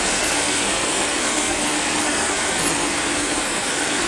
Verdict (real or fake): fake